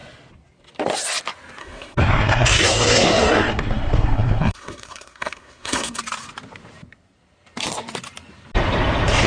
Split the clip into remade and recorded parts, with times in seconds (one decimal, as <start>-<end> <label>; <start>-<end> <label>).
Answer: 0.0-1.6 recorded; 1.6-6.0 remade; 6.0-9.3 recorded